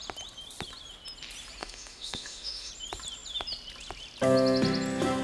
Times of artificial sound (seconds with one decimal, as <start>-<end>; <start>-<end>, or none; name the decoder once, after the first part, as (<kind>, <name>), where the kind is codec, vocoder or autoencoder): 1.6-2.7 (autoencoder, DAC-VAE)